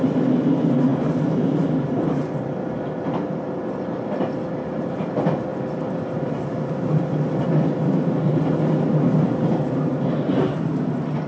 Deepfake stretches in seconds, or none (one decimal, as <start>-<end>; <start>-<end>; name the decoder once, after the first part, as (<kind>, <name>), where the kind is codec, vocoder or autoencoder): 0.9-5.1 (vocoder, BigVGAN v2); 5.5-8.2